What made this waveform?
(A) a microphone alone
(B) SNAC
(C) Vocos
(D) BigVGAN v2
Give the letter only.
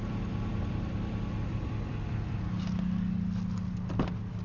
A